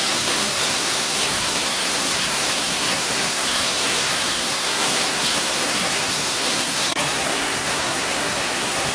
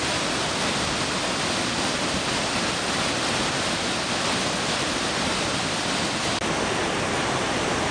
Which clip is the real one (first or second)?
second